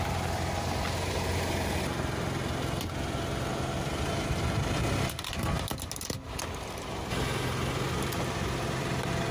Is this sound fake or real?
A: real